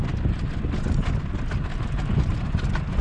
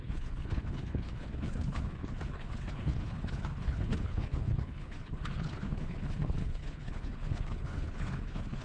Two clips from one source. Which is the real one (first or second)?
first